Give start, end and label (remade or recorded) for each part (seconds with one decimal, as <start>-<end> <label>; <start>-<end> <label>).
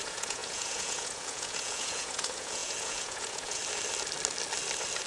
0.0-3.6 remade; 3.6-5.1 recorded